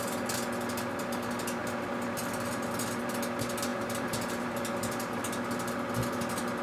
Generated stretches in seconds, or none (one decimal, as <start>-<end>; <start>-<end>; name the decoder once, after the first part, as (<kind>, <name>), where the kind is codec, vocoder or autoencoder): 3.7-5.2 (vocoder, BigVGAN v2)